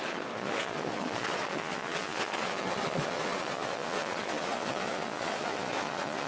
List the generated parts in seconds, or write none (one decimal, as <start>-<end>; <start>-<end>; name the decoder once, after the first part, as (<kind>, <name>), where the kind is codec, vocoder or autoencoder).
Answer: 0.0-6.3 (vocoder, Vocos)